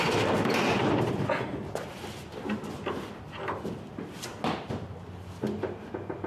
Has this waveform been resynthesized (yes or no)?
no